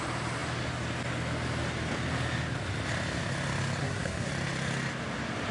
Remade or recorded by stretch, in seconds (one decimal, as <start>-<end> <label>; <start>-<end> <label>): 0.0-3.8 recorded; 3.8-4.3 remade; 4.3-5.5 recorded